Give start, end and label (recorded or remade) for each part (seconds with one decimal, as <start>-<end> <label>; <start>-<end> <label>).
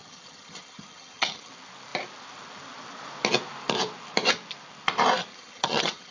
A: 0.0-1.5 remade; 1.5-5.3 recorded; 5.3-6.1 remade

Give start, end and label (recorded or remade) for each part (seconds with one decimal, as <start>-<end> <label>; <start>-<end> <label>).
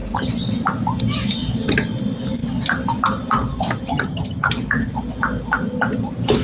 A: 0.0-3.9 recorded; 3.9-4.5 remade; 4.5-6.4 recorded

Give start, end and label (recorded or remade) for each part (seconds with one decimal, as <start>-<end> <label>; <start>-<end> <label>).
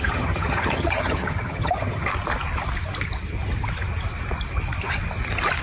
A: 0.0-2.1 remade; 2.1-5.6 recorded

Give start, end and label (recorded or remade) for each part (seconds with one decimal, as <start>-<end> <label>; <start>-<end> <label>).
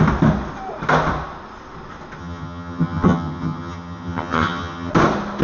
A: 0.0-2.2 recorded; 2.2-4.9 remade; 4.9-5.4 recorded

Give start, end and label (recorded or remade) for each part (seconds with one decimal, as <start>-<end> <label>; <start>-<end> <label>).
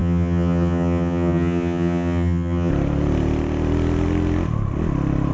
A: 0.0-2.7 remade; 2.7-5.3 recorded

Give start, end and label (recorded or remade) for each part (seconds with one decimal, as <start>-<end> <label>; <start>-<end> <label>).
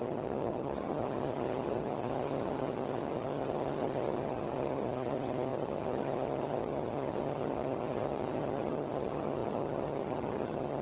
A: 0.0-10.8 remade